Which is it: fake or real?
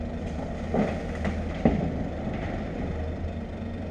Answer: real